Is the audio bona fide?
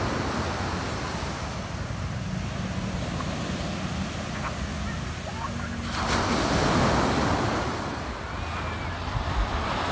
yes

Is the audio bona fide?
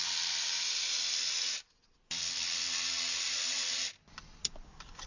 yes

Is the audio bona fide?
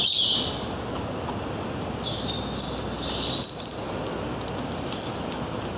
yes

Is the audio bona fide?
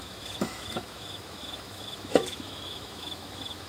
no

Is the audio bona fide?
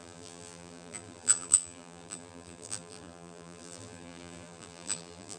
no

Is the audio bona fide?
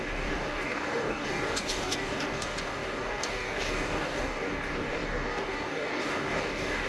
no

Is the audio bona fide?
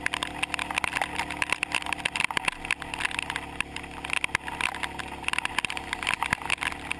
yes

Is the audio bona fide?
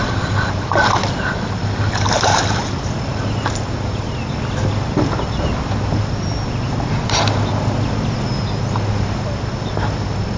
yes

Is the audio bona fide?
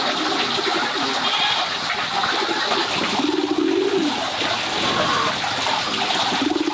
yes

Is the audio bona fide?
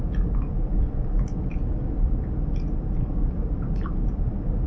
yes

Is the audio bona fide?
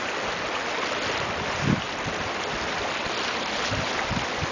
yes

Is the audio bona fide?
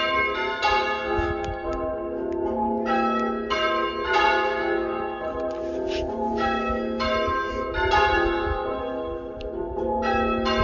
yes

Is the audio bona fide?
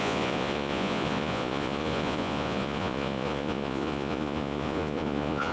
no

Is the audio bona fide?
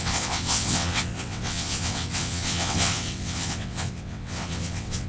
no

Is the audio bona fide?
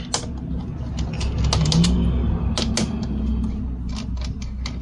yes